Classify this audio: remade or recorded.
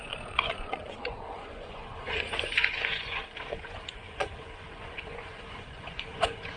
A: remade